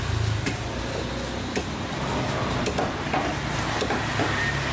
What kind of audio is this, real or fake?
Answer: real